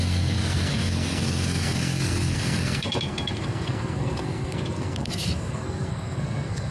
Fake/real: fake